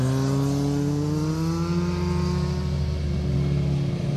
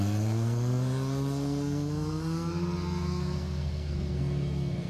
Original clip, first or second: first